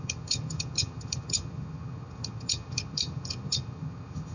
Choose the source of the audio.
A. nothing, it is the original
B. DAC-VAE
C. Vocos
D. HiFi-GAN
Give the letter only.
D